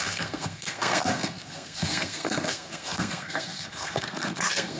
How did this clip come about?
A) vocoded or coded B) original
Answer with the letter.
A